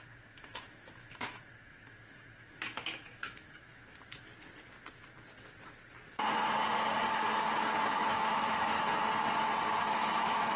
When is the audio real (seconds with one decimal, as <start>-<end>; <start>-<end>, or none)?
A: 3.8-7.9; 8.9-9.9

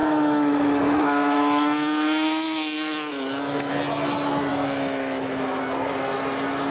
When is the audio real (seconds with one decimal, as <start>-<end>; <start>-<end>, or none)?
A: 3.7-4.5; 5.6-6.7